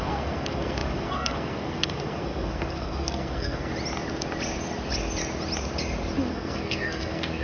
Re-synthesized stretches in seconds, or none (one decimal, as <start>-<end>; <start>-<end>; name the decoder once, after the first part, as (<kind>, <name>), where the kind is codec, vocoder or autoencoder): 0.0-3.7 (codec, SNAC); 6.3-7.4